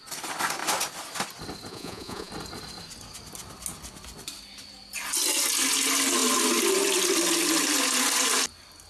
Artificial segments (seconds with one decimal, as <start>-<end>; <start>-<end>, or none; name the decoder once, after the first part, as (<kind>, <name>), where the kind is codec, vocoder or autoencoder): 1.7-2.3 (vocoder, Vocos)

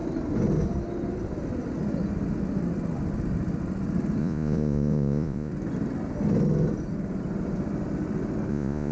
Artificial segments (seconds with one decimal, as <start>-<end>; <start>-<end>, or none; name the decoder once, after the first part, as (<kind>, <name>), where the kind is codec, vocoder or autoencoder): 4.2-5.5 (vocoder, Vocos); 8.5-8.9

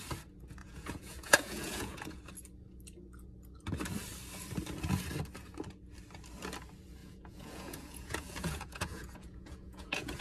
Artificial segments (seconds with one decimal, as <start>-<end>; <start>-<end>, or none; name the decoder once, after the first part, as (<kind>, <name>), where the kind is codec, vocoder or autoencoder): 0.6-2.2 (vocoder, Vocos); 7.0-10.2

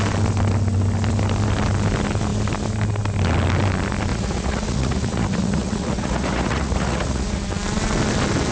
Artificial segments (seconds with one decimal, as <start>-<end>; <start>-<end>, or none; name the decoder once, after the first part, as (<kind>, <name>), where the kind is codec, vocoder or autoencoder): 4.1-7.4 (vocoder, Vocos)

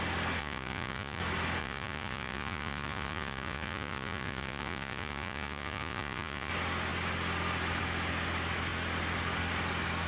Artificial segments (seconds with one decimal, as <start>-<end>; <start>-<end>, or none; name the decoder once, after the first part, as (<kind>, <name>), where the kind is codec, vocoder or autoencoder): 0.4-1.2 (vocoder, Vocos); 1.6-6.5

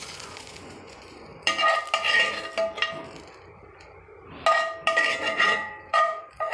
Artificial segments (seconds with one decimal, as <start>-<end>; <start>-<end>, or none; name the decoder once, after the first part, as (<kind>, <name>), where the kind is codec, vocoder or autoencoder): 0.0-1.3 (vocoder, Vocos); 5.2-6.5

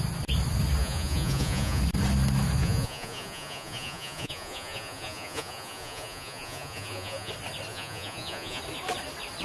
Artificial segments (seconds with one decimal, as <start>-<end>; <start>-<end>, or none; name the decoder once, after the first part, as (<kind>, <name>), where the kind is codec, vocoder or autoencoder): 0.8-1.8 (vocoder, Vocos); 2.6-7.3; 7.7-8.6